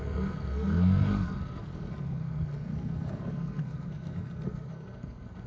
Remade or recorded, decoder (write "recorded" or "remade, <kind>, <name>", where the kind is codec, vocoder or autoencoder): remade, codec, SNAC